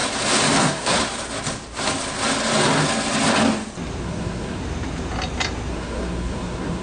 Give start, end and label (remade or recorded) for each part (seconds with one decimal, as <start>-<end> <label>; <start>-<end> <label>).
0.0-0.6 recorded; 0.6-1.0 remade; 1.0-4.0 recorded; 4.0-4.6 remade; 4.6-5.7 recorded; 5.7-6.8 remade